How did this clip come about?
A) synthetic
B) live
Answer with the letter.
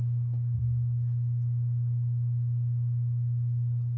B